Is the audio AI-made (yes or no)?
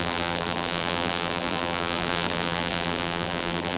yes